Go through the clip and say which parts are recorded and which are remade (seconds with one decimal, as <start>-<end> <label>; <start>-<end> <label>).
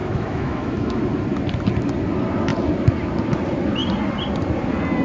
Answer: 0.0-1.0 remade; 1.0-5.0 recorded